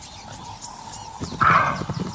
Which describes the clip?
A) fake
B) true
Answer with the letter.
B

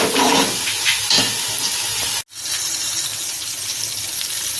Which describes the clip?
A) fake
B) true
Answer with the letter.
B